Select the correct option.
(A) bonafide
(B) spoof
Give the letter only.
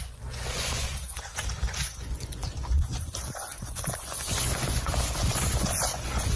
B